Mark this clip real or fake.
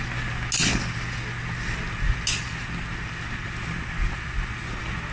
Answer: real